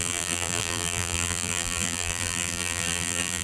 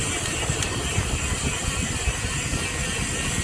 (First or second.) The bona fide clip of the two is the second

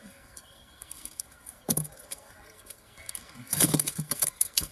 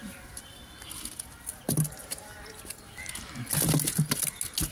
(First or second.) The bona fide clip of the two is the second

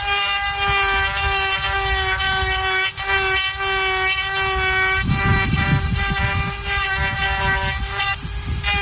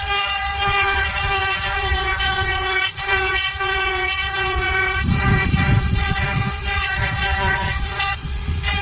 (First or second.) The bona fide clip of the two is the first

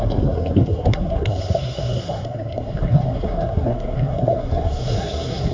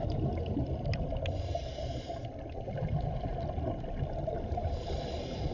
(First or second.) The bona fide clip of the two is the second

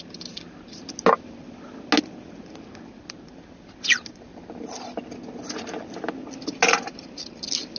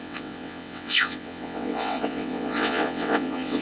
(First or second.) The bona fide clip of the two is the first